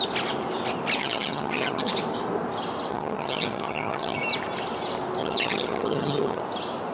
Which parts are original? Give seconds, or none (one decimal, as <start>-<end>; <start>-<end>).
0.0-1.0; 1.9-2.9; 4.2-5.2; 6.4-6.9